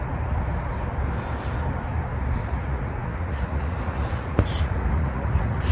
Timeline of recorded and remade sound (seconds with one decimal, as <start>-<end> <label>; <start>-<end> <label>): 0.0-2.4 recorded; 2.4-5.7 remade